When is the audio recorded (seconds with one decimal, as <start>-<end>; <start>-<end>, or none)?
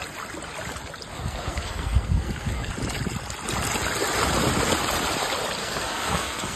0.0-1.1; 2.7-5.6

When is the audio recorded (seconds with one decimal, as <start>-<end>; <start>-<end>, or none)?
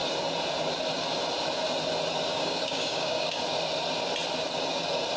0.0-2.3; 3.4-5.2